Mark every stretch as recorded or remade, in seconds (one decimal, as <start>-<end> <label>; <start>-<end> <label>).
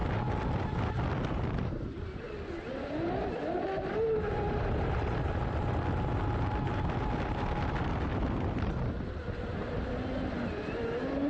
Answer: 0.0-8.1 recorded; 8.1-9.9 remade; 9.9-11.3 recorded